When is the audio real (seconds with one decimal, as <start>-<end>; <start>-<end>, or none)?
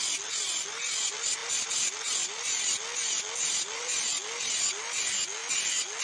0.0-6.0